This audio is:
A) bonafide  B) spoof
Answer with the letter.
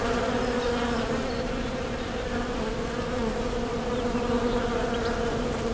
A